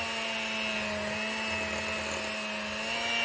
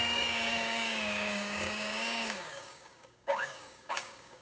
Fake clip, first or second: second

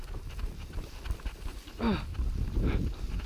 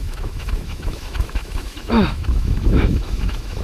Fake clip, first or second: second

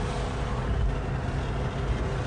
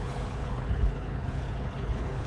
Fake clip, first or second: second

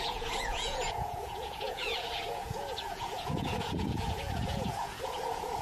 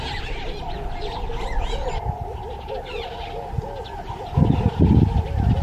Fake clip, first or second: first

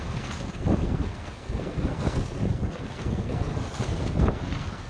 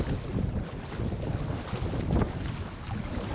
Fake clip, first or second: first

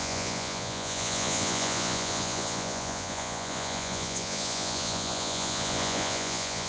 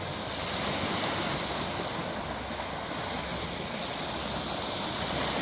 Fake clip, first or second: first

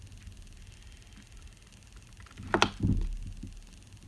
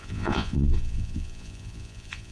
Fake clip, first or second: second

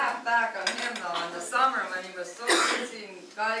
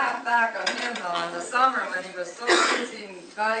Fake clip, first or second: second